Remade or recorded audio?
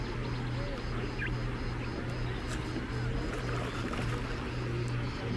recorded